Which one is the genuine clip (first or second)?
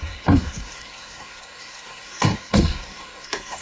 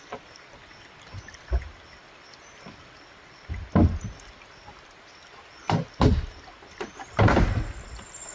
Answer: second